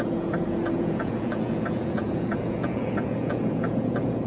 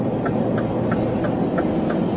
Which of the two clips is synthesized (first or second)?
first